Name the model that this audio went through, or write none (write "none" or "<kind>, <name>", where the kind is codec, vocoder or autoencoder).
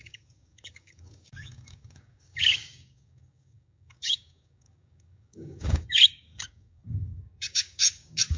codec, DAC